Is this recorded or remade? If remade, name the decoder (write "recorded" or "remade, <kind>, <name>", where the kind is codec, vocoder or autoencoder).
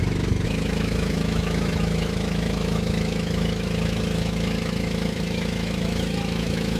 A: remade, autoencoder, DAC-VAE